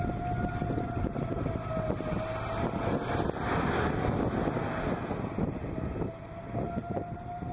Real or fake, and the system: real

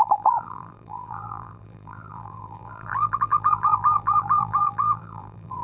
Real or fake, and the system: fake, vocoder, BigVGAN v2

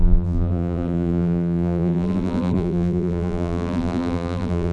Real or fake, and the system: fake, vocoder, BigVGAN v2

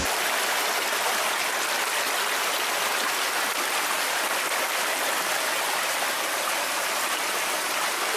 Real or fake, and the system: real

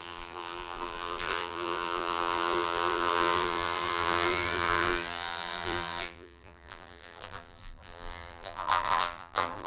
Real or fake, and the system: fake, vocoder, BigVGAN v2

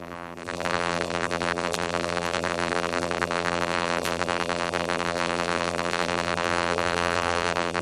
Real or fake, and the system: fake, vocoder, BigVGAN v2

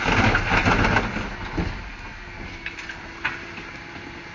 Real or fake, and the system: real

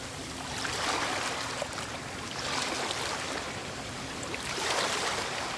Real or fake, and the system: fake, vocoder, BigVGAN v2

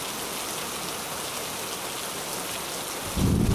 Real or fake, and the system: real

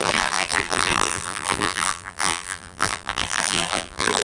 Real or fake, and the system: fake, vocoder, BigVGAN v2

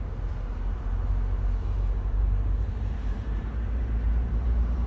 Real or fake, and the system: fake, vocoder, BigVGAN v2